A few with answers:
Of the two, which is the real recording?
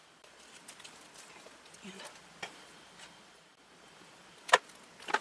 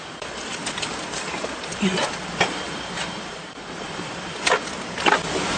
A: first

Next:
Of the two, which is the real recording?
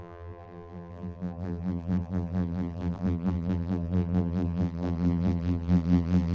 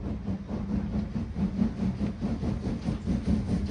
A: second